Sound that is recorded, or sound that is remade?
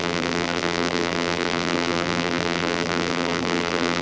remade